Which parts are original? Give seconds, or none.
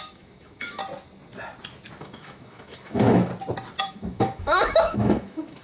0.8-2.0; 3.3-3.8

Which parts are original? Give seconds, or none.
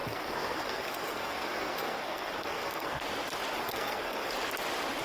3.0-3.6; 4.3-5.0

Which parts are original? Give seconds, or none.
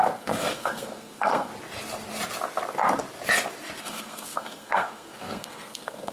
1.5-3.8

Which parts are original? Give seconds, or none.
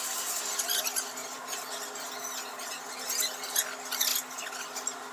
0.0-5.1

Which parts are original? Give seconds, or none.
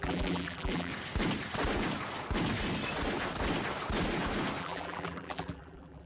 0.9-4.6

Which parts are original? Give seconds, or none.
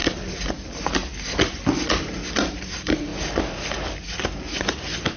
0.0-2.3; 3.1-4.7